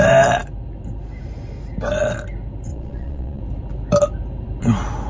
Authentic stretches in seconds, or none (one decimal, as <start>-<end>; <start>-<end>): 0.0-2.7; 3.4-5.1